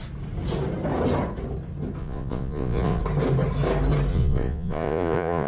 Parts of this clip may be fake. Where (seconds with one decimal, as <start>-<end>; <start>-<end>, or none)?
2.0-3.0; 4.1-5.5